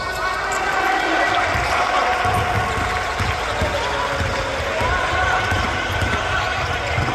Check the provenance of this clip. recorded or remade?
recorded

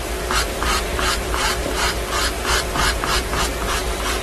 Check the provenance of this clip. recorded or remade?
recorded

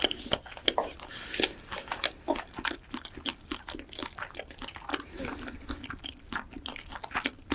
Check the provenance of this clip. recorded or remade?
recorded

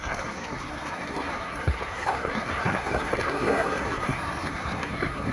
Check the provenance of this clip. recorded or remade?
remade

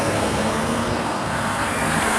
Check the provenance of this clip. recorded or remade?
remade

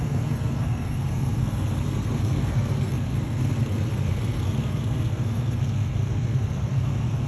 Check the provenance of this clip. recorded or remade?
remade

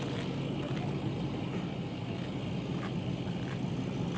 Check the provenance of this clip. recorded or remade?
recorded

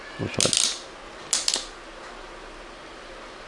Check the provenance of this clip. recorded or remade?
recorded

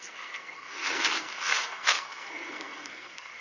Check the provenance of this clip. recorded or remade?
remade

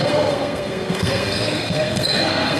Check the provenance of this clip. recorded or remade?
remade